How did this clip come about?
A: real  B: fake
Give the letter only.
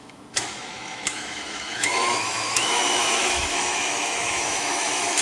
B